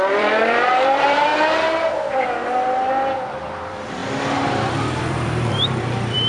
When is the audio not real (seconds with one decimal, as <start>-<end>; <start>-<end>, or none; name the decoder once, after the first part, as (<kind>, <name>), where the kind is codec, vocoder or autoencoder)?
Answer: 0.0-1.3 (vocoder, BigVGAN v2); 3.1-6.3